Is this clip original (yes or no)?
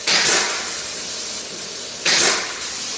yes